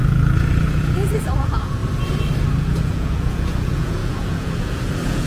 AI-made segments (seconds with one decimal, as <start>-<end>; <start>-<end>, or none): 0.0-1.8; 2.6-5.3